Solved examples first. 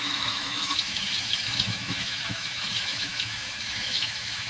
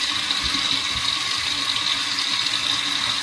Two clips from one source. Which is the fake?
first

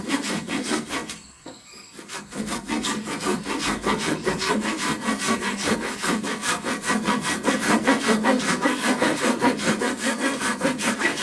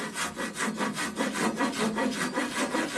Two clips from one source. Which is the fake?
first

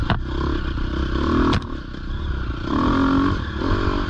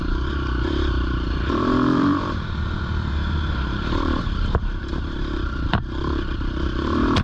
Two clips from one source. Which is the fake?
second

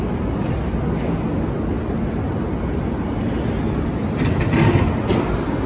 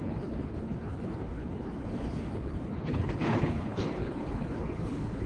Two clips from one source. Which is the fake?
second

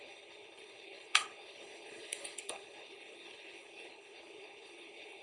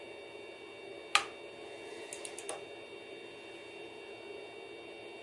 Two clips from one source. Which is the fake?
first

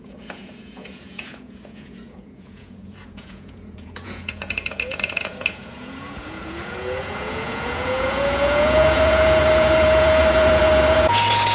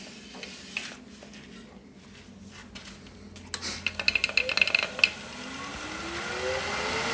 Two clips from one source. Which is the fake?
first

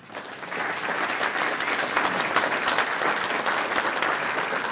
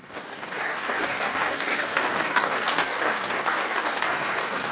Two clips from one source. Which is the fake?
second